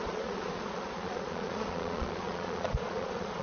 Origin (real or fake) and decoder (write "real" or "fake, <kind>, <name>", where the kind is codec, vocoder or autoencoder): fake, vocoder, Vocos